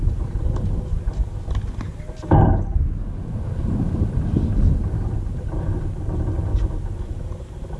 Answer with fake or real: real